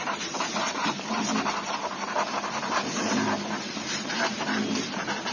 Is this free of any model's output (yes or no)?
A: no